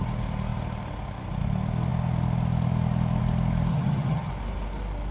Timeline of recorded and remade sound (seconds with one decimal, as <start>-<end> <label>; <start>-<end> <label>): 0.0-3.7 recorded; 3.7-4.3 remade; 4.3-5.1 recorded